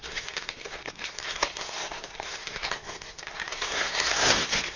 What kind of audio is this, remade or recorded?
remade